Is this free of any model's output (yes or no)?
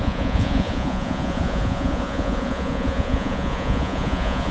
no